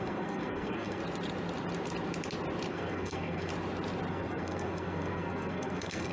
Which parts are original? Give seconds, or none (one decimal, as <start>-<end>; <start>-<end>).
1.0-2.7; 3.5-4.1